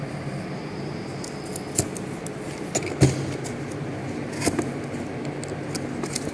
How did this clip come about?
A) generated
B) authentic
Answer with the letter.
B